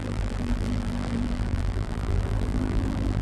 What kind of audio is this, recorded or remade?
remade